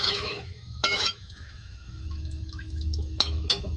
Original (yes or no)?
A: no